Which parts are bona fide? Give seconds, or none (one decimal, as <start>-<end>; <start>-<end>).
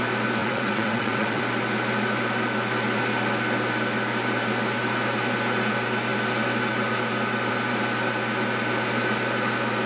0.0-0.4; 1.4-9.9